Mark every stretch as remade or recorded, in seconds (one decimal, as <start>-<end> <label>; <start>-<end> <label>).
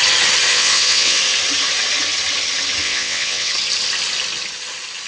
0.0-0.5 recorded; 0.5-1.2 remade; 1.2-2.8 recorded; 2.8-3.5 remade; 3.5-5.1 recorded